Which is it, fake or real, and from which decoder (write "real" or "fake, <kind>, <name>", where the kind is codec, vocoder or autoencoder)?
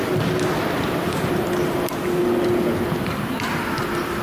real